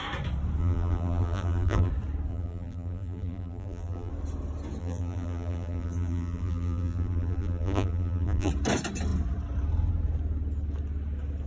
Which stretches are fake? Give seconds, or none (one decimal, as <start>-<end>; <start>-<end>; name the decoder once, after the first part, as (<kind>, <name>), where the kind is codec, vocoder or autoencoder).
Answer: 0.6-1.9 (vocoder, BigVGAN v2); 2.3-4.1; 4.8-8.5